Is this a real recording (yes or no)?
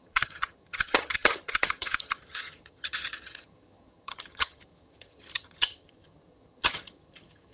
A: no